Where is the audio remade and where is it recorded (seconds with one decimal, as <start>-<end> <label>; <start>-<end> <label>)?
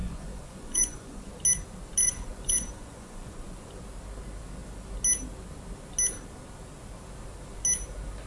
0.0-1.3 remade; 1.3-2.0 recorded; 2.0-3.7 remade; 3.7-8.3 recorded